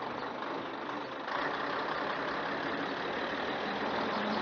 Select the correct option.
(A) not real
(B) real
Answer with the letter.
B